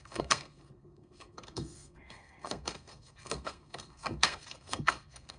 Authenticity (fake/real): fake